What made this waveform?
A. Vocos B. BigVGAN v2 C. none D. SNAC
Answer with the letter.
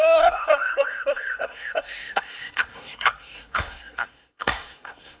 D